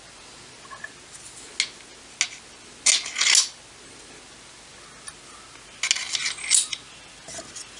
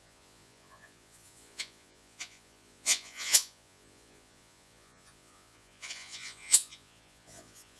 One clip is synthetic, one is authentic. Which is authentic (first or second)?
first